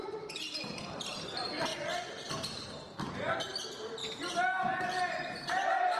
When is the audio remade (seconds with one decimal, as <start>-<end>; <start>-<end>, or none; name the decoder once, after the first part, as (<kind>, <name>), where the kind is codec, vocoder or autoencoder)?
0.0-1.7 (vocoder, BigVGAN v2); 2.4-4.0; 5.0-6.0